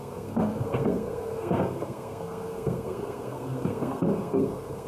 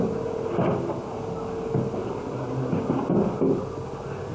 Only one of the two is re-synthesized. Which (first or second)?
first